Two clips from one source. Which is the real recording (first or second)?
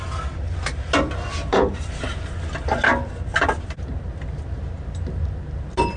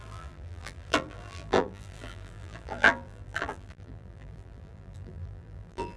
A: first